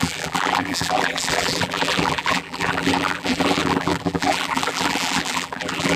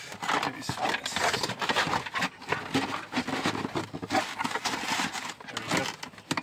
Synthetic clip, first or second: first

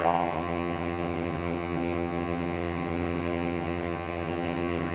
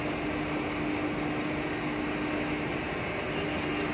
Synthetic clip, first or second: first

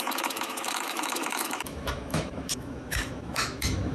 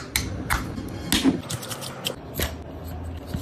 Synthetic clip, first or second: first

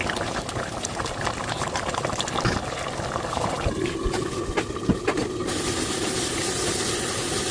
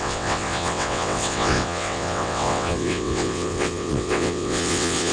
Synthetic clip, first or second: second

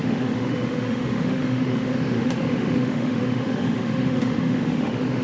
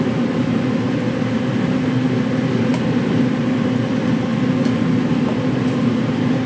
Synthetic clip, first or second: first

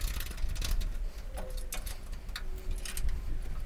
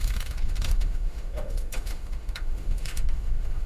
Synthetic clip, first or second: second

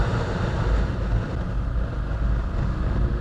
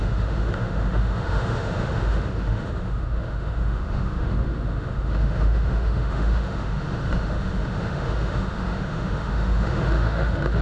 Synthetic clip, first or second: second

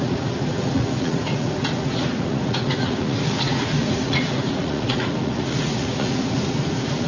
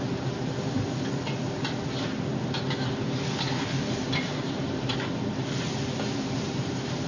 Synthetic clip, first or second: first